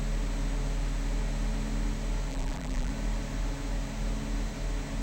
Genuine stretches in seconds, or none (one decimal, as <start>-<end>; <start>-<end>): 0.0-2.3; 2.9-5.0